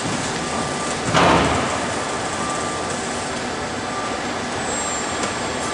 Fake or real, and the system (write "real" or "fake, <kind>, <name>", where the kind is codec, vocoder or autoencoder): real